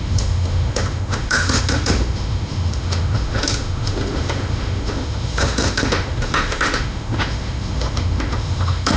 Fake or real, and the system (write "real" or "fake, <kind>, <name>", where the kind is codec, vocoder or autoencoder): fake, autoencoder, DAC-VAE